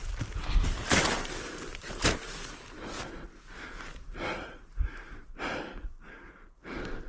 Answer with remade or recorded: recorded